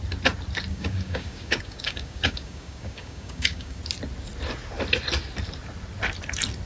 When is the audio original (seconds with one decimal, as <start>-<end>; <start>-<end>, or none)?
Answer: 0.0-0.7; 3.8-6.7